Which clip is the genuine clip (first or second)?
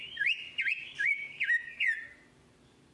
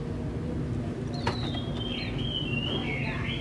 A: second